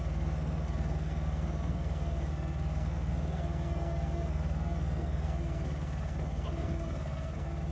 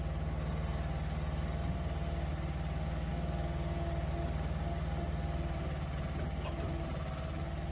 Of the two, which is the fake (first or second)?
first